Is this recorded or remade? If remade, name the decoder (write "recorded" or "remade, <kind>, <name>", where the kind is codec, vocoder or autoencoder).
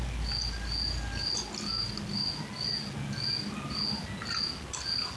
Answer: recorded